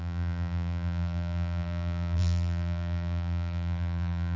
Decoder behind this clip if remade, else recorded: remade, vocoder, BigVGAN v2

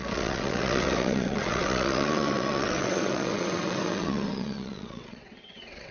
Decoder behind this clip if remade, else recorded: remade, vocoder, WaveNeXt